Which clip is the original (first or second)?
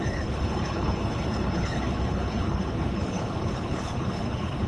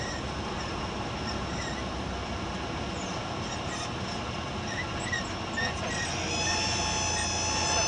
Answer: second